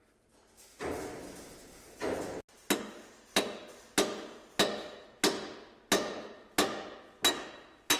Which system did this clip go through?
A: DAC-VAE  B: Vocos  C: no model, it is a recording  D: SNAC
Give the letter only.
C